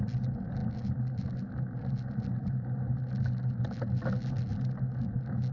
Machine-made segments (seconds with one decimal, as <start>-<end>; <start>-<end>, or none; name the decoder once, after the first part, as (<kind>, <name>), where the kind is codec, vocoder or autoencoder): none